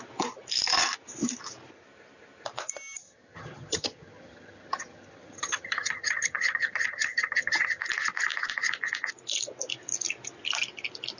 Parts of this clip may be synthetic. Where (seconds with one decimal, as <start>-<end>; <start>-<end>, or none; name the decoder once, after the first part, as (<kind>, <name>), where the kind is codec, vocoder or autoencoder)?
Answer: 3.0-7.8 (vocoder, HiFi-GAN)